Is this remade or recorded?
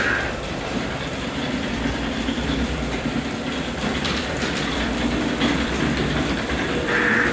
remade